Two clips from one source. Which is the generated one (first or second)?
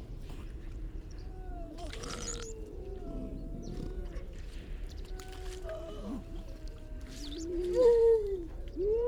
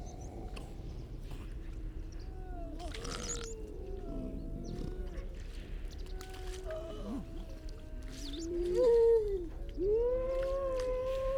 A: first